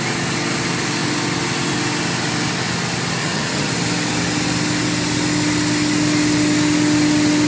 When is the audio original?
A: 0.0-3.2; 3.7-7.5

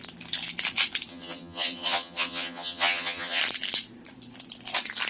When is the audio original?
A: 0.0-1.1; 3.4-5.1

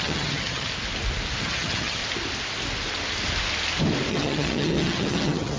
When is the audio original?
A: 0.7-1.4; 2.0-4.1

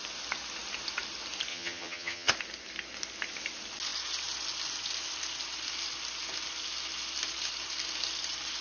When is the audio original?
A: 0.0-1.5; 2.3-8.6

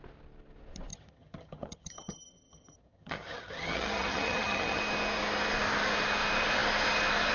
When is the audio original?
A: 0.0-0.9; 4.8-7.3

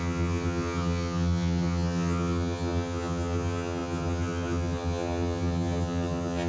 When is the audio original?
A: none